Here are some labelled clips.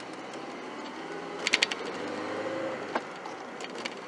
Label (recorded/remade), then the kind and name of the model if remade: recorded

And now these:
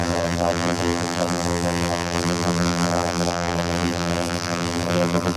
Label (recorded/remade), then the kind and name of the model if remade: remade, vocoder, BigVGAN v2